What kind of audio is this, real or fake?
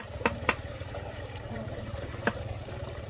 fake